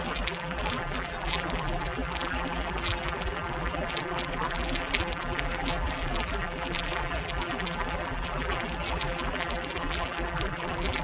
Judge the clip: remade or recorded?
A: remade